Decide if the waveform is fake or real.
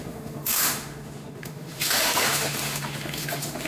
fake